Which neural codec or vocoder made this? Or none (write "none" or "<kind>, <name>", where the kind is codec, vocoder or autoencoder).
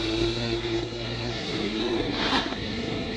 codec, SNAC